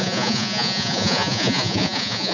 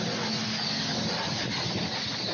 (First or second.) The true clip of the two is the second